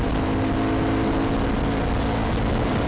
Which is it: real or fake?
real